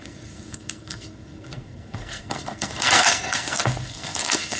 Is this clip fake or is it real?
fake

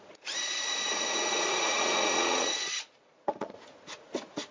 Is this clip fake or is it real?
fake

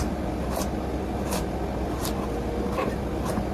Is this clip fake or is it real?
real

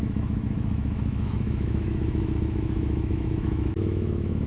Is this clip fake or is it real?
fake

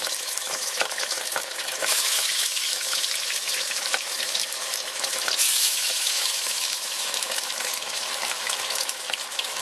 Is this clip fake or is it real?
fake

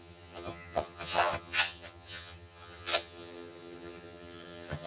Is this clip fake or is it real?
fake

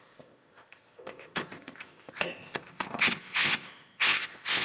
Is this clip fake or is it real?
fake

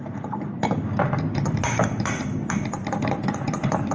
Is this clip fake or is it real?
real